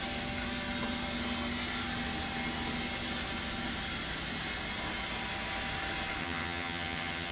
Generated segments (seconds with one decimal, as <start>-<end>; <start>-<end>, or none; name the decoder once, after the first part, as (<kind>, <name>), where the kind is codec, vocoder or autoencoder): 6.2-7.3 (vocoder, HiFi-GAN)